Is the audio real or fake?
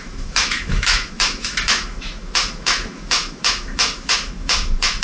fake